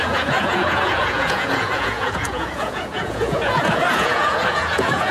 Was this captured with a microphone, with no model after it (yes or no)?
no